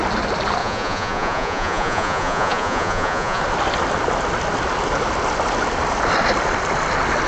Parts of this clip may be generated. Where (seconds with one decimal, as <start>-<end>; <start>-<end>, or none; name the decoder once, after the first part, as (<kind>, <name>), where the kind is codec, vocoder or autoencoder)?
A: 0.6-3.4 (vocoder, Vocos)

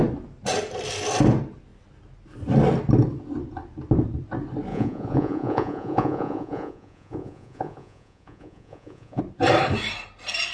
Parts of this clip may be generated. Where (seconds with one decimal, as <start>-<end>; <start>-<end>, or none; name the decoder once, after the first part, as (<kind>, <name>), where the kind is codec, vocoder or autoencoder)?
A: 4.7-9.2 (vocoder, Vocos)

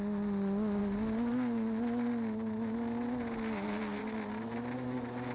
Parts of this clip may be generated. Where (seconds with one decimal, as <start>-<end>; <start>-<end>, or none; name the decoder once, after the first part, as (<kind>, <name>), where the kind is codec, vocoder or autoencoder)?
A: none

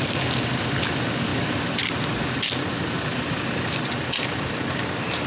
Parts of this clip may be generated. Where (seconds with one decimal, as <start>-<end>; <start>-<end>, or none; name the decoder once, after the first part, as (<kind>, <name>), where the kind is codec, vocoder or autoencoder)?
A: none

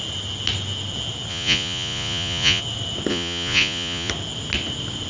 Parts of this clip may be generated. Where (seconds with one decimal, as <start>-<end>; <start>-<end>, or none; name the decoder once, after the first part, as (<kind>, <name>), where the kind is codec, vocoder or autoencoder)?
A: 1.3-2.6 (vocoder, Vocos); 3.1-4.1

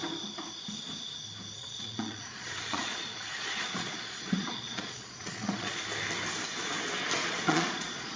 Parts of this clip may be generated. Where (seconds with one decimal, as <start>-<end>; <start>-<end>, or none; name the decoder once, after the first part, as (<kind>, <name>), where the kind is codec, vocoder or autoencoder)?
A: 1.6-5.8 (vocoder, Vocos); 7.2-8.2